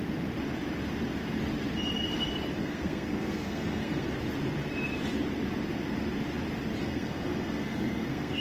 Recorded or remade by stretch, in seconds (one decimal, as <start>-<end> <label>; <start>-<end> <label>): 0.0-2.6 recorded; 2.6-4.1 remade; 4.1-6.8 recorded; 6.8-8.4 remade